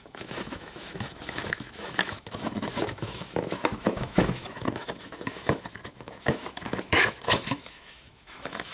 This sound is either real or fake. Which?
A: fake